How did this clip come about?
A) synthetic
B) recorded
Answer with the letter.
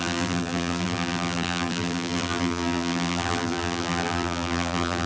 A